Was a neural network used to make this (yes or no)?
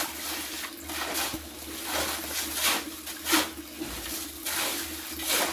no